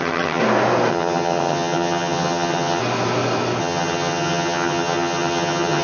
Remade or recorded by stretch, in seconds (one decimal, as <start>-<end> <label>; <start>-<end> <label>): 0.0-0.4 remade; 0.4-0.9 recorded; 0.9-2.8 remade; 2.8-3.6 recorded; 3.6-5.8 remade